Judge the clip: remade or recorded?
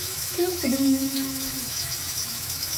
remade